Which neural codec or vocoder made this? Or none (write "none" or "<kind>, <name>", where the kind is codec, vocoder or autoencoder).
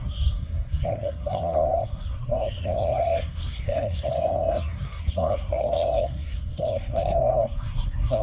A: codec, SNAC